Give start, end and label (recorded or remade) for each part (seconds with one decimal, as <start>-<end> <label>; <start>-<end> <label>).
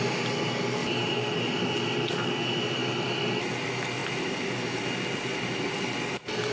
0.0-0.8 recorded; 0.8-2.1 remade; 2.1-6.5 recorded